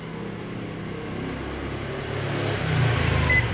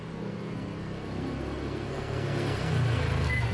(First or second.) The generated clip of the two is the second